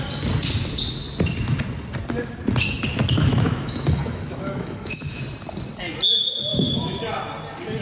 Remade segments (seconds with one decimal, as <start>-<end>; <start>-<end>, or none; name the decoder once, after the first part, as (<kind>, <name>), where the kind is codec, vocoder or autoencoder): 3.3-5.2 (autoencoder, DAC-VAE); 6.5-7.0